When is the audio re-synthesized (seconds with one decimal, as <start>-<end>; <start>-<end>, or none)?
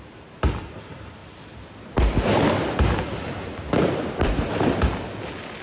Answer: none